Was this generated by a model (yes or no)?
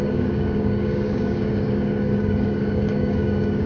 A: yes